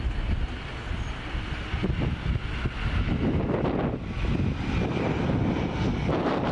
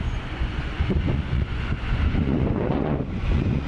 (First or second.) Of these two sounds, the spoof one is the second